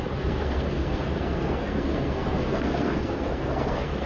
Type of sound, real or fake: fake